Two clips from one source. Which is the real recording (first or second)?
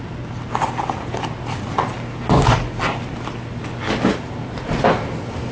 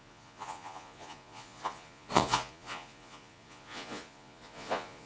first